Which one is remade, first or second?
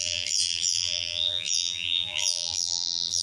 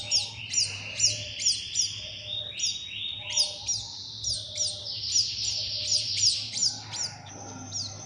first